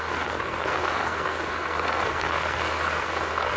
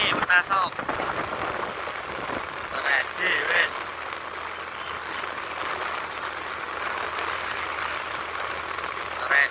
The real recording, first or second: second